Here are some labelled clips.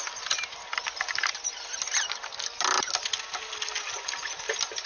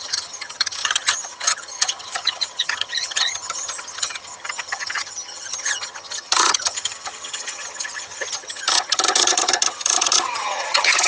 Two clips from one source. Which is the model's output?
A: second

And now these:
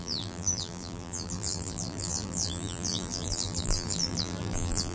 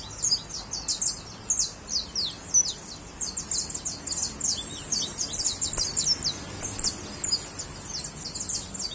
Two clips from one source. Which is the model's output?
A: first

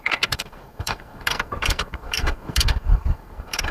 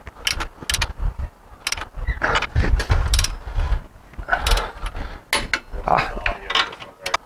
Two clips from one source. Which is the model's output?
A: first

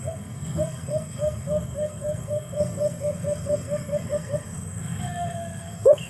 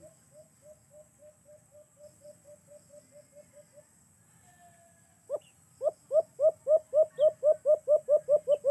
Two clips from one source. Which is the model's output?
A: first